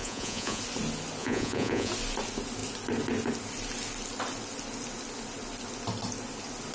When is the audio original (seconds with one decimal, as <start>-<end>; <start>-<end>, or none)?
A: 0.6-1.2; 1.9-6.7